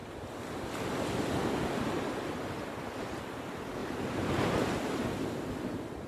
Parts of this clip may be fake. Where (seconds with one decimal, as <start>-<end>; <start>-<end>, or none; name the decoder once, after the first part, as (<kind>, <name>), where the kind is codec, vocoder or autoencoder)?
3.8-4.7 (vocoder, BigVGAN v2)